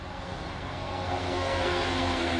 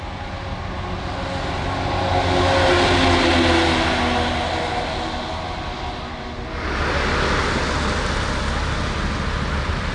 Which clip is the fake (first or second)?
first